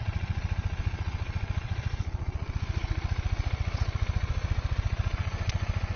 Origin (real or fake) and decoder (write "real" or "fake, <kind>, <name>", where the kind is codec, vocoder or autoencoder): fake, vocoder, Vocos